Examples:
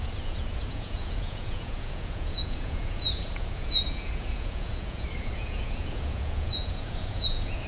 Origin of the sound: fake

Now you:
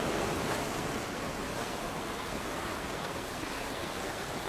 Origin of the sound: fake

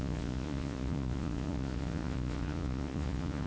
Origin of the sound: fake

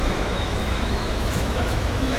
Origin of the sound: fake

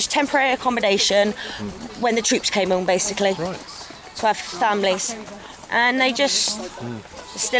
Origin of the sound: real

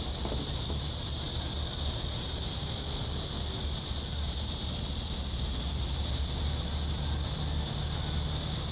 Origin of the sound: real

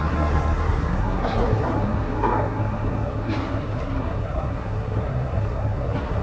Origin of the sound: fake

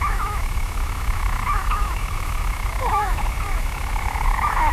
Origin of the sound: fake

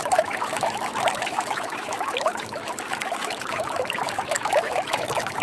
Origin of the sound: fake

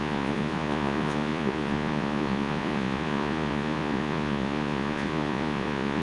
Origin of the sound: fake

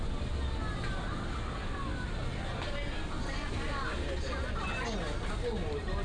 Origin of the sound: real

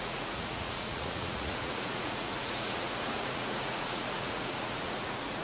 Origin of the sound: fake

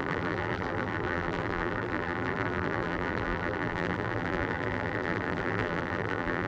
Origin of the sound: fake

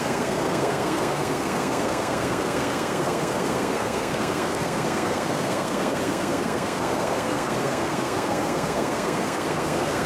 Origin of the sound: fake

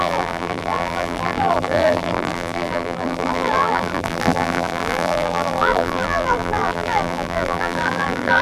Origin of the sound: fake